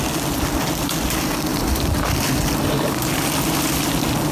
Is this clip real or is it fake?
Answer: real